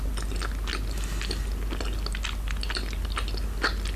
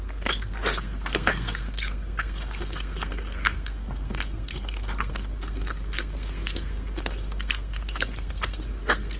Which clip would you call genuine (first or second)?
first